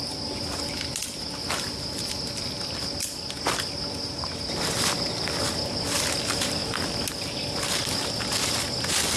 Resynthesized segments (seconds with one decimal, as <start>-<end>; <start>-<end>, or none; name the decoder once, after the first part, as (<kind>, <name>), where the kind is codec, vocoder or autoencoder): none